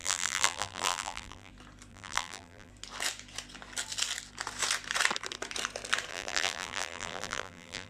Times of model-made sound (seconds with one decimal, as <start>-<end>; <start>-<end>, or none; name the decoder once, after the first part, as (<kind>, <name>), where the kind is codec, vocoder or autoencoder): 0.0-1.5 (vocoder, BigVGAN v2); 1.9-2.7; 6.1-7.9